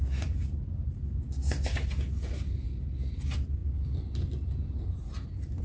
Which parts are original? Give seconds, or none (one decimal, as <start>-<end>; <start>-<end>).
0.0-5.6